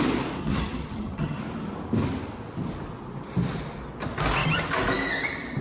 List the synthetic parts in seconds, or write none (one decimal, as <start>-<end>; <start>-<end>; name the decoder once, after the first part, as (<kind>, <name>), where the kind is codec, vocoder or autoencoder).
0.4-1.4 (vocoder, HiFi-GAN)